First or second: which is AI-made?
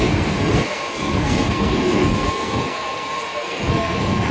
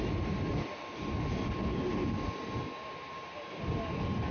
first